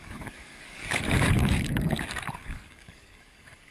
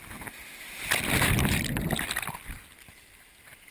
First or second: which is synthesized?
first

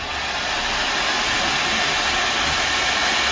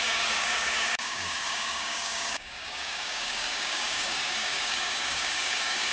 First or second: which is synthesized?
second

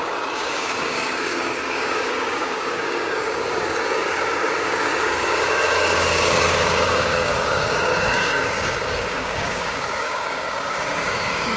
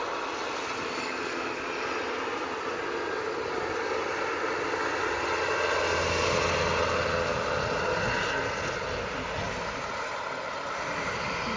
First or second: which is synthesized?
first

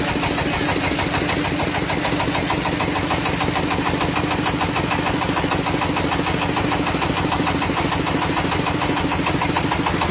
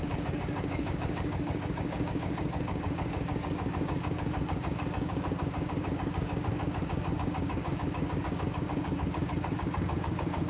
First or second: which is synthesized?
second